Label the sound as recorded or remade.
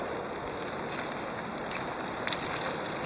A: recorded